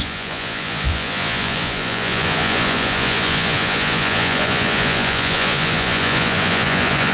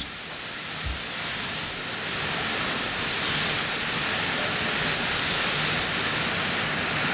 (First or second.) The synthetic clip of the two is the first